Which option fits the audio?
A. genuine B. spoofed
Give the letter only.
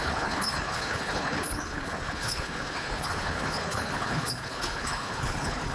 B